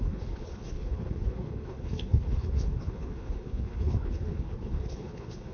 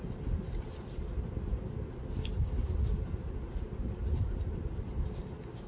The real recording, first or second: second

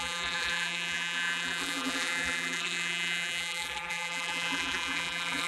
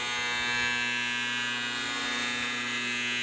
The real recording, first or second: second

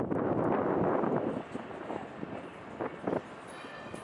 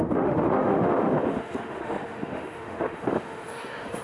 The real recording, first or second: first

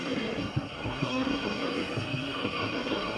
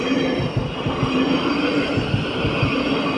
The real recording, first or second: second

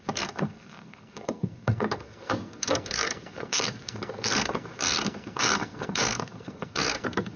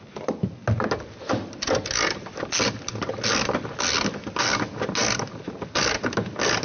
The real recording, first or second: second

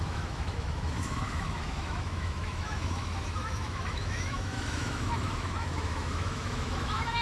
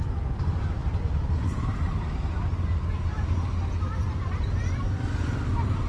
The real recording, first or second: second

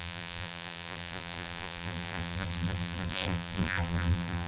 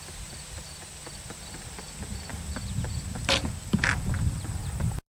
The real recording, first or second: second